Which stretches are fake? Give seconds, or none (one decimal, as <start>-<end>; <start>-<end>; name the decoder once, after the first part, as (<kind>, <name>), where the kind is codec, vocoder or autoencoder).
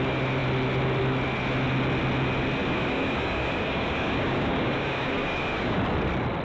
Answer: 2.6-5.8 (codec, DAC)